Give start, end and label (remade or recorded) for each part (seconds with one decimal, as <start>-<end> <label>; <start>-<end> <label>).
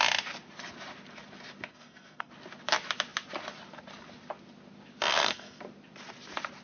0.0-1.7 recorded; 1.7-2.3 remade; 2.3-5.1 recorded; 5.1-5.6 remade; 5.6-6.6 recorded